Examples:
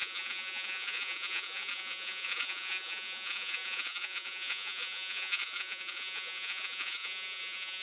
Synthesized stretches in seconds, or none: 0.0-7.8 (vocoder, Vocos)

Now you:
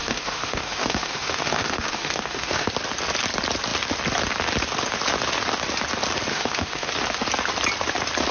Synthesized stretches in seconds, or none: 0.0-2.7 (autoencoder, DAC-VAE); 6.3-6.9